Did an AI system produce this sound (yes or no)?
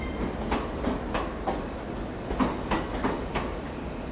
no